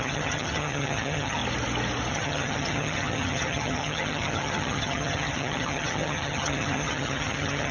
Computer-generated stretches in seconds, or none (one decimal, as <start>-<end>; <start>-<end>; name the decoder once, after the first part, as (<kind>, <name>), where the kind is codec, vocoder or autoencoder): 0.0-1.4 (vocoder, HiFi-GAN); 2.1-7.7